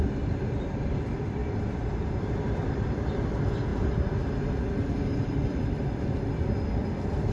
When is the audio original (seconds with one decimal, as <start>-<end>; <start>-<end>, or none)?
1.4-2.7; 3.7-5.0